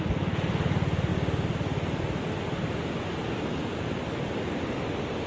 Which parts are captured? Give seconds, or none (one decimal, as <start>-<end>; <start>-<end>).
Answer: 0.0-5.3

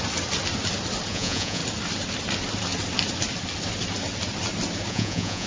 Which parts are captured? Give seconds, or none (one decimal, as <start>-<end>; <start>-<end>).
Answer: 0.0-1.1; 1.6-4.9